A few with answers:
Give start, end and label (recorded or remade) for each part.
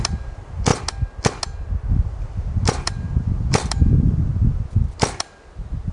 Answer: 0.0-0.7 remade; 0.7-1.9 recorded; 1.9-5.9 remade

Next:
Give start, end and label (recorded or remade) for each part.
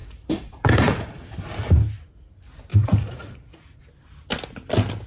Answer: 0.0-1.2 remade; 1.2-2.7 recorded; 2.7-3.8 remade; 3.8-5.1 recorded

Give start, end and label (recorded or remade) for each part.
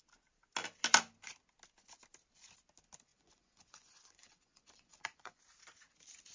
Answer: 0.0-3.1 recorded; 3.1-5.4 remade; 5.4-6.3 recorded